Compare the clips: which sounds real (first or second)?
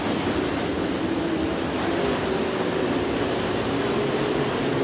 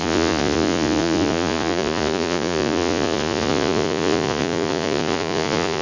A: first